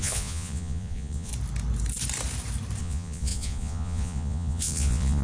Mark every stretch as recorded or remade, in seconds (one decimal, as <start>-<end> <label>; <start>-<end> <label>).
0.0-1.3 remade; 1.3-2.8 recorded; 2.8-5.2 remade